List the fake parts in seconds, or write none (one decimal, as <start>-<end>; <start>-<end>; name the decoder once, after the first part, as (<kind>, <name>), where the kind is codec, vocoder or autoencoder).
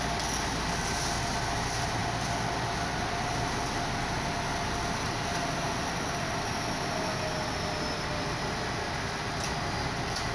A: none